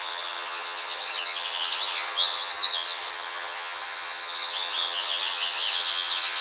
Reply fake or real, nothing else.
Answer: fake